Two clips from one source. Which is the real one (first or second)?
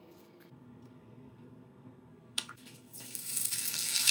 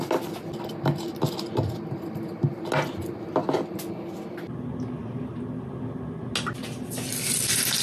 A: second